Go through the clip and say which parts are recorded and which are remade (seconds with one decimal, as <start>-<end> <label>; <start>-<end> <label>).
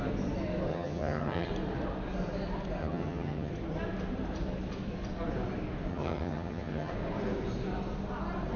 0.0-0.7 recorded; 0.7-1.5 remade; 1.5-2.8 recorded; 2.8-3.5 remade; 3.5-5.9 recorded; 5.9-6.9 remade; 6.9-8.6 recorded